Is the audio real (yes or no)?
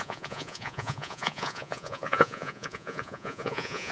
no